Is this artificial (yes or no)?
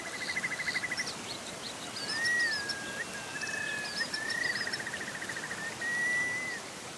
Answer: no